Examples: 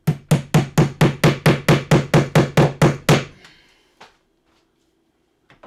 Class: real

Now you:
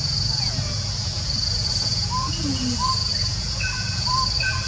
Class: fake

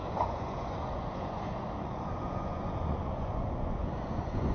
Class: fake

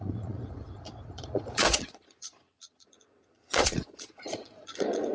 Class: fake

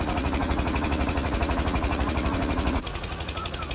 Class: fake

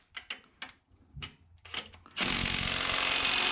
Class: real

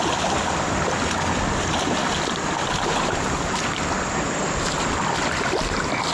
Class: real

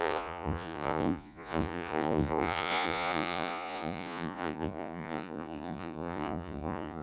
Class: fake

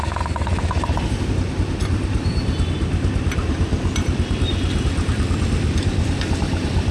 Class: real